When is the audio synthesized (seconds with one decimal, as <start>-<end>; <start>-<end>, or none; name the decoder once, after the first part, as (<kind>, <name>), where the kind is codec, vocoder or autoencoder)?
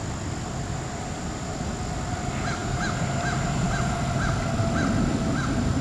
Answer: none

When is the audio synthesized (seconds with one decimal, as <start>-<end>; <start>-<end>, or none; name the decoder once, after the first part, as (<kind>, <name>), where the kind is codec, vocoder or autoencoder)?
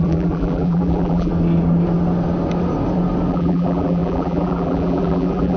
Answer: 0.0-1.3 (vocoder, BigVGAN v2); 3.3-5.6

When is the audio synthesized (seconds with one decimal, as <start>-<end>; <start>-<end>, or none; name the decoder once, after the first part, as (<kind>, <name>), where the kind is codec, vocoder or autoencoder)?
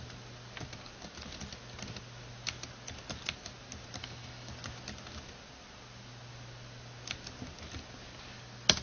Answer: 4.0-4.5 (autoencoder, DAC-VAE)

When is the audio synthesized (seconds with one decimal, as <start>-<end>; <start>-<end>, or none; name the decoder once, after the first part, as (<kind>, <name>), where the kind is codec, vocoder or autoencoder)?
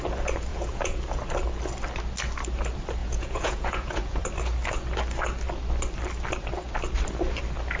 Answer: 0.5-1.0 (vocoder, Vocos); 3.0-4.2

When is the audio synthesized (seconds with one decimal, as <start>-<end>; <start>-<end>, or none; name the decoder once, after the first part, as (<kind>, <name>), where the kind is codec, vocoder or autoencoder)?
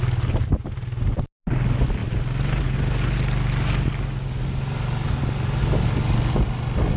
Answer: none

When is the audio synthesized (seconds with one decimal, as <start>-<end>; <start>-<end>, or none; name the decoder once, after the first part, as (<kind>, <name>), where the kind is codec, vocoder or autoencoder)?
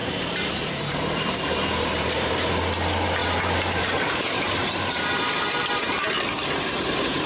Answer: 0.0-2.3 (vocoder, BigVGAN v2); 3.2-4.1